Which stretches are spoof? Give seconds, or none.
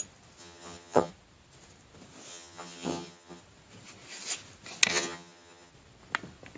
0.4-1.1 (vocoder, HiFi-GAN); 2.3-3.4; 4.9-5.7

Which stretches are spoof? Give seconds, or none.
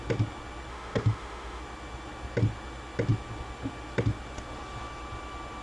0.7-1.6 (autoencoder, DAC-VAE)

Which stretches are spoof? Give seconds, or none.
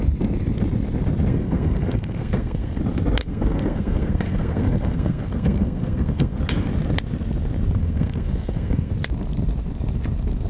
1.3-2.8 (codec, SNAC); 3.2-6.4; 7.8-8.9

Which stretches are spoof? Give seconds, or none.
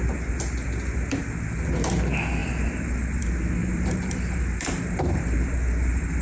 2.4-3.2 (vocoder, BigVGAN v2); 3.6-6.2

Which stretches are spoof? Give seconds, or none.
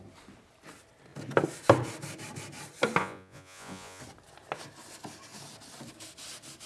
3.0-4.0 (vocoder, Vocos)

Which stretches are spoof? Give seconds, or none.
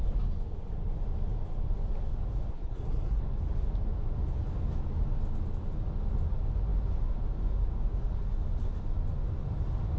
2.5-3.2 (codec, SNAC)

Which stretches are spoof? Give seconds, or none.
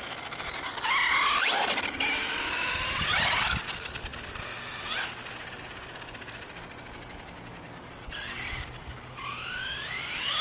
none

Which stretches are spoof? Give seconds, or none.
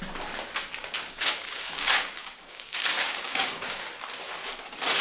0.8-3.8 (codec, DAC)